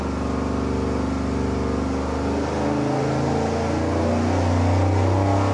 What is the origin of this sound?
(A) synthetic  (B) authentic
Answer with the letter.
B